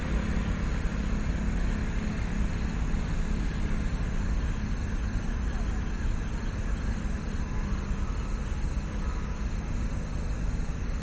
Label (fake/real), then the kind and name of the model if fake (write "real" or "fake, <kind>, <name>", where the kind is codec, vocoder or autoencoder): real